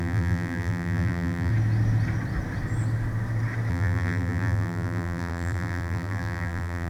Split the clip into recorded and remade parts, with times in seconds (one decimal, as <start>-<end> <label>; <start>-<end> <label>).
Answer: 0.0-1.5 remade; 1.5-3.7 recorded; 3.7-6.9 remade